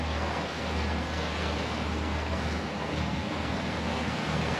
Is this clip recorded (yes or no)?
no